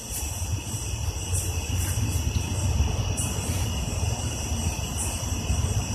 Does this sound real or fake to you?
real